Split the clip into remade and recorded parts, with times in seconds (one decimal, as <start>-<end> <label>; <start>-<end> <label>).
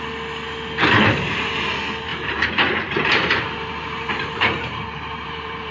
0.0-2.1 recorded; 2.1-5.7 remade